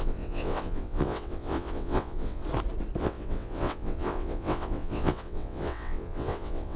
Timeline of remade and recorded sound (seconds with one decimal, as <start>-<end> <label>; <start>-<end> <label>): 0.0-2.4 remade; 2.4-3.0 recorded; 3.0-6.8 remade

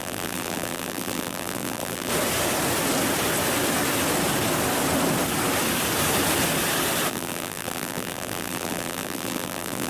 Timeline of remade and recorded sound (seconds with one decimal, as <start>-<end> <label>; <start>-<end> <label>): 0.0-2.1 remade; 2.1-7.1 recorded; 7.1-9.9 remade

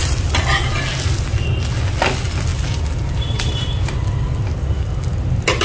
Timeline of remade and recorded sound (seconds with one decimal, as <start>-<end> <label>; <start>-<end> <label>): 0.0-2.5 recorded; 2.5-3.9 remade; 3.9-5.6 recorded

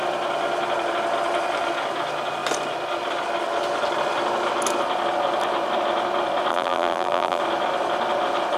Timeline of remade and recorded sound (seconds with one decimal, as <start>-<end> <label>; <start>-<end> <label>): 0.0-6.5 recorded; 6.5-7.4 remade; 7.4-8.6 recorded

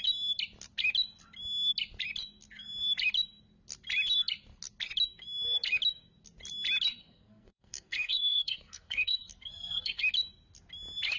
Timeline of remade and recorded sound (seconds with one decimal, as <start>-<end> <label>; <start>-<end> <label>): 0.0-7.0 recorded; 7.0-10.0 remade; 10.0-11.2 recorded

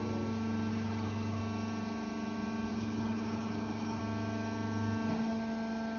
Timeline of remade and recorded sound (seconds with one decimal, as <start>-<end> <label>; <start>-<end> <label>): 0.0-0.7 recorded; 0.7-1.4 remade; 1.4-2.7 recorded; 2.7-4.0 remade; 4.0-6.0 recorded

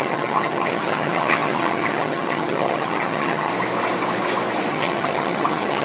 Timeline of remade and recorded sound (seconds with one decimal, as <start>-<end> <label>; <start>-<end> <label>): 0.0-3.5 remade; 3.5-4.7 recorded; 4.7-5.8 remade

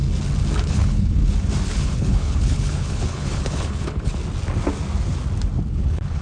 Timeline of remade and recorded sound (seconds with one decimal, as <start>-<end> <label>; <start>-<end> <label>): 0.0-0.6 recorded; 0.6-1.2 remade; 1.2-1.7 recorded; 1.7-4.1 remade; 4.1-5.7 recorded; 5.7-6.2 remade